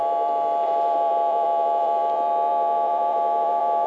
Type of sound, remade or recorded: remade